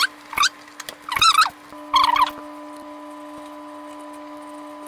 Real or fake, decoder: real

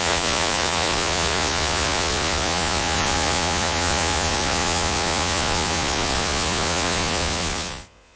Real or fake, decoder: fake, vocoder, Vocos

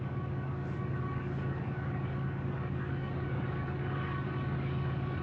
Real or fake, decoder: fake, codec, DAC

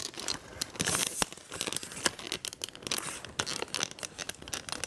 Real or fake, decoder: real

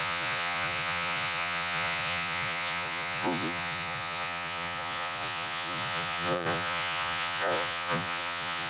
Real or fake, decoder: fake, vocoder, Vocos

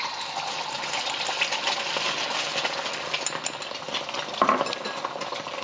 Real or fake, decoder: real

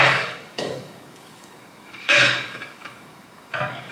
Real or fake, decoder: fake, codec, DAC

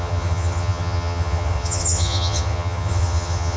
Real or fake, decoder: fake, vocoder, HiFi-GAN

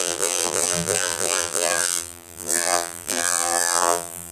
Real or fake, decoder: fake, vocoder, BigVGAN v2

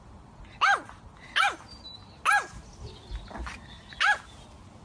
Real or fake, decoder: real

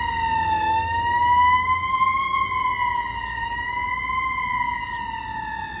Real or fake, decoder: real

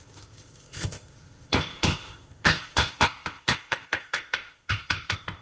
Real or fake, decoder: fake, codec, ZipCodec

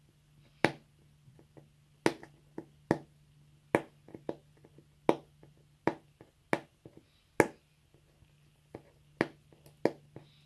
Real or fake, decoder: real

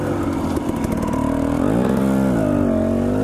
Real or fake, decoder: real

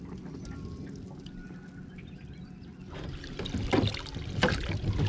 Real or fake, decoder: real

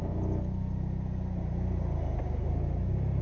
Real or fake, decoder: real